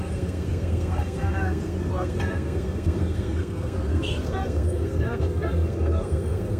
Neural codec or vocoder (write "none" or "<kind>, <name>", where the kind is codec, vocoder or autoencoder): codec, SNAC